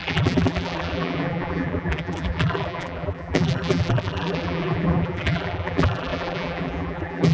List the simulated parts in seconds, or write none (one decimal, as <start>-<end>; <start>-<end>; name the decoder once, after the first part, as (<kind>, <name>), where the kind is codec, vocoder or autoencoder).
0.0-7.3 (vocoder, BigVGAN v2)